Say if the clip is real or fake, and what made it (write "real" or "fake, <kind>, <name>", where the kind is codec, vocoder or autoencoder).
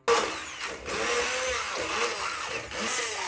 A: real